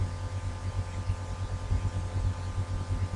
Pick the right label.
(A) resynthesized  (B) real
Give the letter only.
B